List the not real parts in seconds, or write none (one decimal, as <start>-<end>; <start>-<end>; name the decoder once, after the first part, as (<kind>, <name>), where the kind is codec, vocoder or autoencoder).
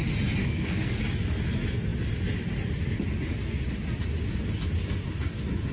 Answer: 0.4-1.0 (codec, SNAC)